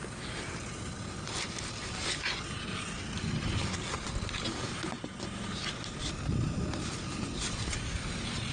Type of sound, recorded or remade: recorded